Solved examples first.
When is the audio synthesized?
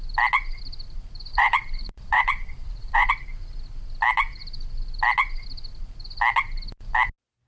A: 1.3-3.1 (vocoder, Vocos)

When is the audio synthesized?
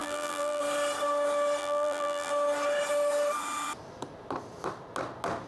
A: 0.0-0.6 (vocoder, BigVGAN v2); 1.6-2.3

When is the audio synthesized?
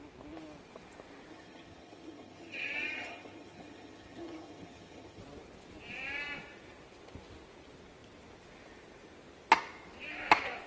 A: 1.3-5.2 (vocoder, HiFi-GAN)